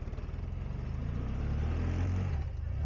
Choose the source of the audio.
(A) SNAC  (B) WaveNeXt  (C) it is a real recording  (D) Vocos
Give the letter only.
C